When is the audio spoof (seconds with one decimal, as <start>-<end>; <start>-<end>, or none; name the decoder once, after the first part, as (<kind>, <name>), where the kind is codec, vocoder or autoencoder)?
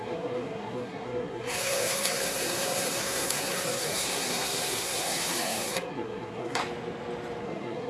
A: 0.0-6.6 (codec, SNAC); 7.4-7.9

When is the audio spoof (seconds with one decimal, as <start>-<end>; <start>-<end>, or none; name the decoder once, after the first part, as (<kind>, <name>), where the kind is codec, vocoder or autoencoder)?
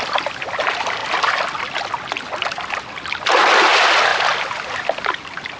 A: none